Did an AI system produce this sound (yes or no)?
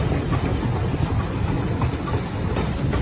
no